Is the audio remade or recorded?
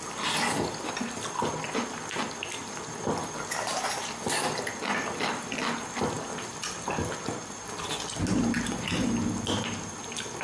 recorded